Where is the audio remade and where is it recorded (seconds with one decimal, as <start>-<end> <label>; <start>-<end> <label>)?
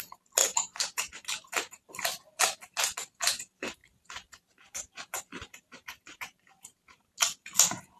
0.0-0.4 recorded; 0.4-1.9 remade; 1.9-3.8 recorded; 3.8-7.1 remade; 7.1-8.0 recorded